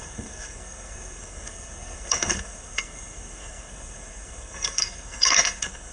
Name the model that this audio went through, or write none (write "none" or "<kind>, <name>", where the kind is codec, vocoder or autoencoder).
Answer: codec, SNAC